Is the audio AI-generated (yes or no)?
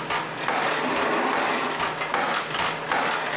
no